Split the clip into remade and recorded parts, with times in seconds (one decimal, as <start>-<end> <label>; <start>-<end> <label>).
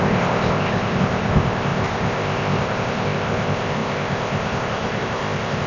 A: 0.0-5.7 remade